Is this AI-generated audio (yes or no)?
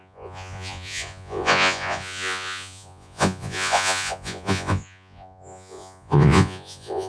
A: yes